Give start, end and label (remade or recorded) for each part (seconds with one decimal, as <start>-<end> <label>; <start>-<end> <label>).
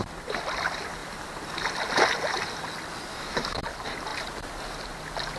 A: 0.0-3.1 recorded; 3.1-3.6 remade; 3.6-5.4 recorded